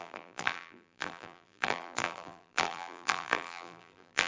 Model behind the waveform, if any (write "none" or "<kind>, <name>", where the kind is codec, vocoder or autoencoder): vocoder, BigVGAN v2